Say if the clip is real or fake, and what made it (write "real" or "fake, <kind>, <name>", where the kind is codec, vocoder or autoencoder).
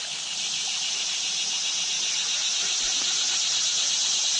real